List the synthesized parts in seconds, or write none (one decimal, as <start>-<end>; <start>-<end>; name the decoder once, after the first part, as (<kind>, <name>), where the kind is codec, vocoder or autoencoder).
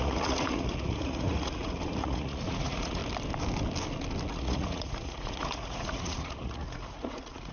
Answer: 0.0-3.0 (vocoder, Vocos); 4.3-7.5